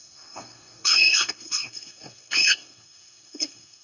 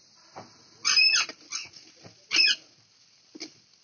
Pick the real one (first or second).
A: second